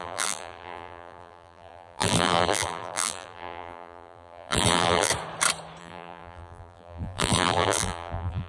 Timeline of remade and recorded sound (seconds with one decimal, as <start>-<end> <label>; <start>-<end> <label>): 0.0-5.1 remade; 5.1-5.8 recorded; 5.8-8.5 remade